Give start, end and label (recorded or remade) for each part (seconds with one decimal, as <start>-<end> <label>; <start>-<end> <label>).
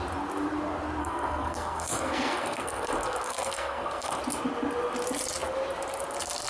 0.0-1.0 recorded; 1.0-4.2 remade; 4.2-6.5 recorded